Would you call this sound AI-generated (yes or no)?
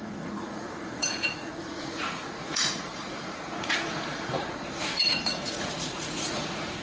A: yes